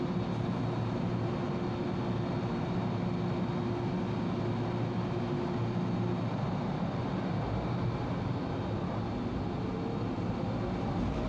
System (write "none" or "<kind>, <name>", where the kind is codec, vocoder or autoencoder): none